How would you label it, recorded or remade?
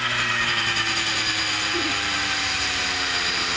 remade